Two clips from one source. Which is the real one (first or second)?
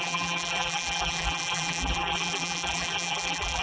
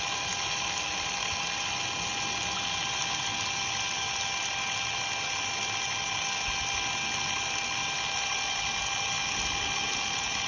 second